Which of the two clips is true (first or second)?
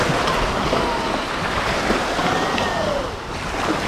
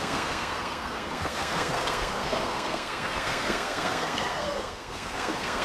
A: first